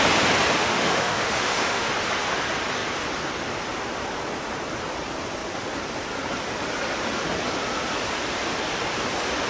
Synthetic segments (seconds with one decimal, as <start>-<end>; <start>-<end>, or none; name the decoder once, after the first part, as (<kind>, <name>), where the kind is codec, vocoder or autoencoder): 0.6-1.9 (autoencoder, DAC-VAE)